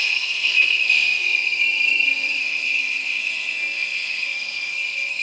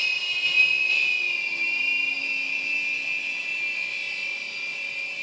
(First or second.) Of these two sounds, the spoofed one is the first